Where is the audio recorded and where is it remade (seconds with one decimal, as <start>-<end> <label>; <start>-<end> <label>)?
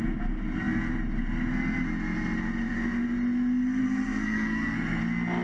0.0-3.8 recorded; 3.8-5.0 remade; 5.0-5.4 recorded